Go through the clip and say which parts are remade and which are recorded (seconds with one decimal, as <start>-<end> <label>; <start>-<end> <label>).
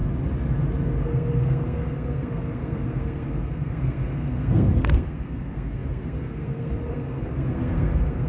0.0-1.0 recorded; 1.0-8.3 remade